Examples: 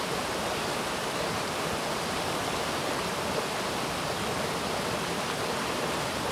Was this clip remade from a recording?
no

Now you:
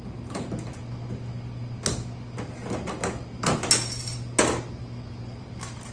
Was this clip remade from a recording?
no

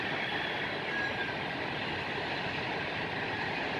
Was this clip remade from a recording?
no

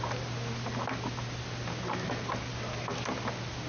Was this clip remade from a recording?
no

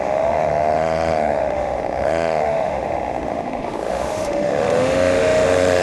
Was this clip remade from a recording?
yes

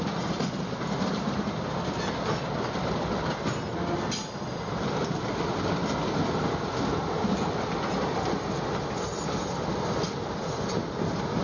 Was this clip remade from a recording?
no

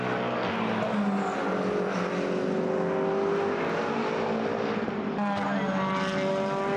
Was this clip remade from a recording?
no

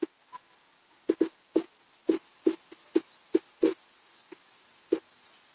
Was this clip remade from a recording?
no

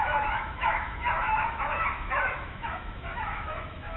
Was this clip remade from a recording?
yes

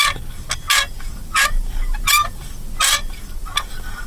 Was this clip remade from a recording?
no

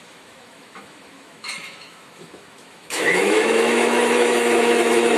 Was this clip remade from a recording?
yes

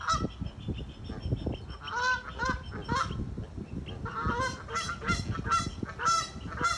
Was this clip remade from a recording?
no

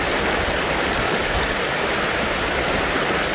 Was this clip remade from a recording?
no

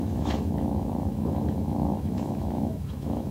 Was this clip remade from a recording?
yes